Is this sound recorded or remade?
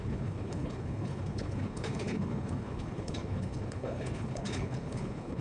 remade